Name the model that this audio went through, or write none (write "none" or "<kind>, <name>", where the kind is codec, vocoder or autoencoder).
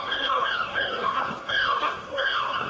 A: codec, SNAC